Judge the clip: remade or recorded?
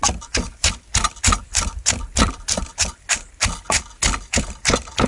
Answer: recorded